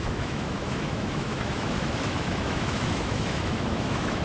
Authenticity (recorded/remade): remade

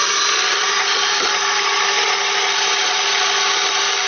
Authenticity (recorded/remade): recorded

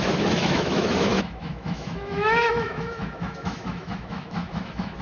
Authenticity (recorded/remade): remade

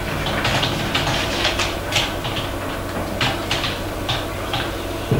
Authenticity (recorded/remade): recorded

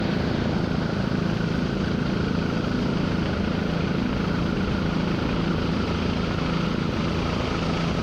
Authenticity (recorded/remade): recorded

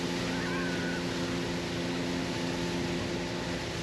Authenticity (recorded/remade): recorded